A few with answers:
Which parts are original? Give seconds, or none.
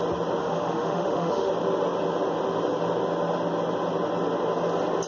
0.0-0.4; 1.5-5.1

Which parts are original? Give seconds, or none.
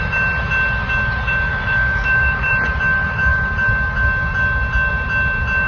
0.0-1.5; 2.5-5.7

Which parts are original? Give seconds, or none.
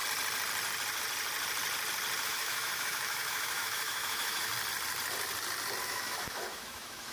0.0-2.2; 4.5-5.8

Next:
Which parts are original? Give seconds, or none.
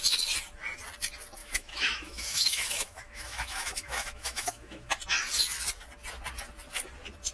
0.0-1.4; 4.9-7.3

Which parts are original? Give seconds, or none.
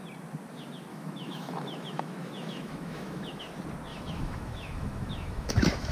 0.0-0.9; 3.4-3.9